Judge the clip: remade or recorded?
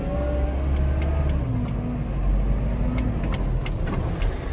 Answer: recorded